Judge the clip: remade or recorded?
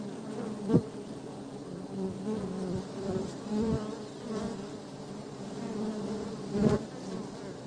remade